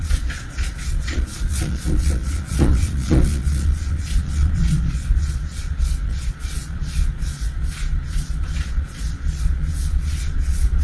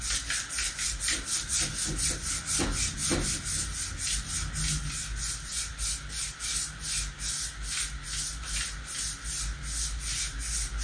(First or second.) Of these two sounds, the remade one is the first